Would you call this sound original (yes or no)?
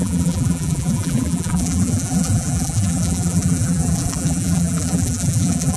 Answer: no